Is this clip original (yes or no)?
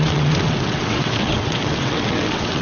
no